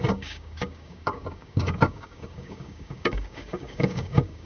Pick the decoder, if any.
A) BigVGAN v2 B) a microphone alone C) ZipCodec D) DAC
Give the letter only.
D